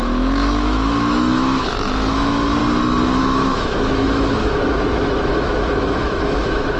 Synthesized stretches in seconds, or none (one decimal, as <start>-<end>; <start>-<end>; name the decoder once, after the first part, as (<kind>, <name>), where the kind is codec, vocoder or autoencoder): 0.0-2.6 (autoencoder, DAC-VAE); 3.2-6.8

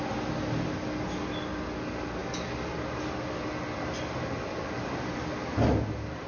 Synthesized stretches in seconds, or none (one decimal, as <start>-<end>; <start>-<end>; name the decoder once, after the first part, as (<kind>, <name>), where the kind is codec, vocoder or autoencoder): none

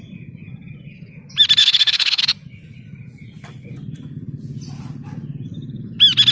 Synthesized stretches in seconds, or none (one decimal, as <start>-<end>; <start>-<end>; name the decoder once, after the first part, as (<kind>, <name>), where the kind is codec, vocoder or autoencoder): 1.6-2.2 (codec, HILCodec)

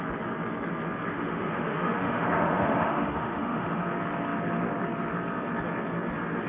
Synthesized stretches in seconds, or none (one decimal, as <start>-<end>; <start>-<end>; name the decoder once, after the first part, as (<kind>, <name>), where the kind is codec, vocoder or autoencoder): 1.1-3.8 (autoencoder, DAC-VAE)

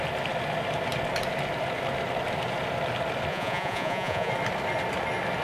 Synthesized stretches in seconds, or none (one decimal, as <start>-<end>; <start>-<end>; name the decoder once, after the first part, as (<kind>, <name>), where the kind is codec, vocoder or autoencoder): 3.3-4.3 (vocoder, Vocos)

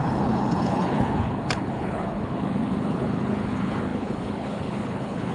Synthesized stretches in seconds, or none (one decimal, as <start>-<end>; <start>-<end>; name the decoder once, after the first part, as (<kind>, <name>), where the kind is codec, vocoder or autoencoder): 0.0-5.3 (codec, HILCodec)

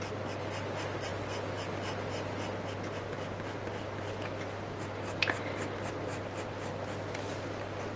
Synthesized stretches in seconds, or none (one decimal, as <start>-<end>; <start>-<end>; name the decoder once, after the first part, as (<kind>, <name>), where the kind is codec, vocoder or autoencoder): none